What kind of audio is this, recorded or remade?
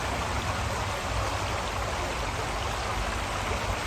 recorded